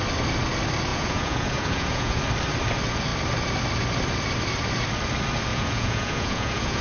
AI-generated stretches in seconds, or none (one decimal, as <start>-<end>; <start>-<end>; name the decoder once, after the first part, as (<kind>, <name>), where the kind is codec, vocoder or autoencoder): 0.9-2.2 (vocoder, Vocos); 5.5-6.8